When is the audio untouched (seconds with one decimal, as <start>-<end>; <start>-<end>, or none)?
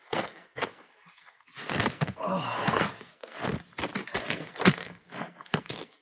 3.5-4.2